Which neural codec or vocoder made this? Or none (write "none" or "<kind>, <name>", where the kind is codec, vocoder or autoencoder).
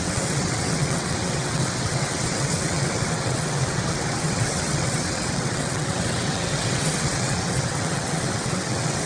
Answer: vocoder, WaveNeXt